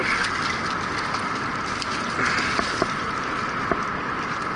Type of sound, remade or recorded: recorded